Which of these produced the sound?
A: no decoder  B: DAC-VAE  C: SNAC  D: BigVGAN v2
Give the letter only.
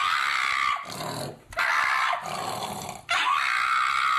A